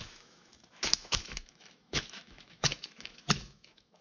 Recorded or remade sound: remade